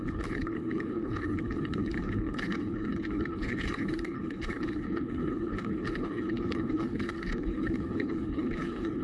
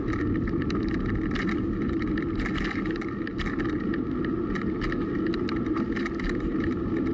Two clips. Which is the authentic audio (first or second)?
second